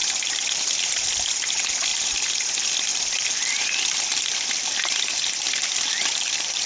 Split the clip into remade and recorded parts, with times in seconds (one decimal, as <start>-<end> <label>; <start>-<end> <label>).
0.0-0.9 remade; 0.9-1.9 recorded; 1.9-2.5 remade; 2.5-2.9 recorded; 2.9-6.7 remade